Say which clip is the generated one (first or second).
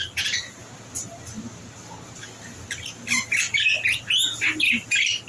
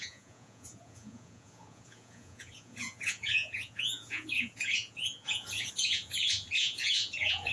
second